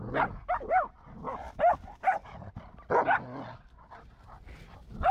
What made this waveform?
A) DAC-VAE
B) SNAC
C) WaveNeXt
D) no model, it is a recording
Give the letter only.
D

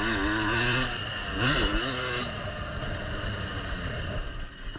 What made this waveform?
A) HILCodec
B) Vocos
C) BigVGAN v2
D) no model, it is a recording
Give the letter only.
D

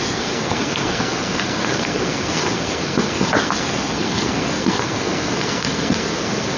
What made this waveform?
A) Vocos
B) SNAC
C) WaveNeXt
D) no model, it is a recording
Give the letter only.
B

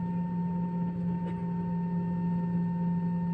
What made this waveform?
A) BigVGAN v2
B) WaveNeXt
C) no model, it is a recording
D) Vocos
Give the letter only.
C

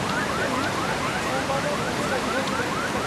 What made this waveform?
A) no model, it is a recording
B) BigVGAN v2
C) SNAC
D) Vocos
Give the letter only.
A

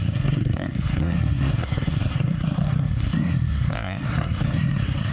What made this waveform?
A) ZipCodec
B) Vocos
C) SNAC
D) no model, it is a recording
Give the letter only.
C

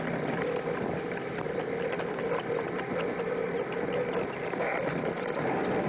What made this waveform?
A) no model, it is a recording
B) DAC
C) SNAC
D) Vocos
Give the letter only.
A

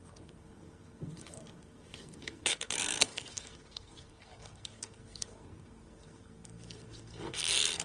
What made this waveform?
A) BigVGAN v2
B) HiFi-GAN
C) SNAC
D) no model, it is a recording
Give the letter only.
C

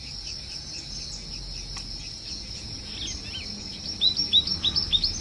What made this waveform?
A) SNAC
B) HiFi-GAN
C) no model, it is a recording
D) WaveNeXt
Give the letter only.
C